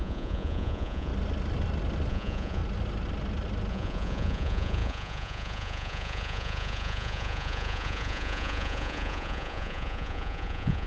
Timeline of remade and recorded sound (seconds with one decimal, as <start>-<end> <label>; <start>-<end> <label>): 0.0-1.1 remade; 1.1-2.1 recorded; 2.1-2.6 remade; 2.6-3.7 recorded; 3.7-10.9 remade